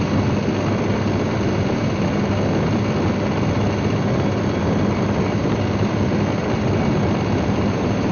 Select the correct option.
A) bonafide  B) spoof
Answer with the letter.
B